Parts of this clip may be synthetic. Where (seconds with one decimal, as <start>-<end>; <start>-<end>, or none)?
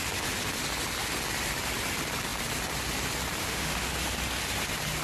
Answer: 3.4-3.9